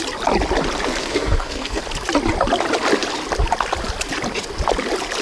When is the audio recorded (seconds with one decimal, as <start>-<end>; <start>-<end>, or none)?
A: 0.0-1.0; 1.8-5.2